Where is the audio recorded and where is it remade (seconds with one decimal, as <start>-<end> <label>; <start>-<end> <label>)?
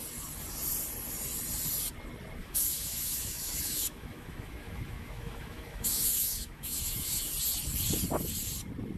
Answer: 0.0-2.4 recorded; 2.4-7.3 remade; 7.3-9.0 recorded